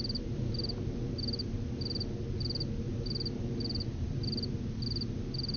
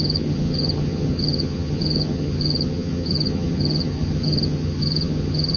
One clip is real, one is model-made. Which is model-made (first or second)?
second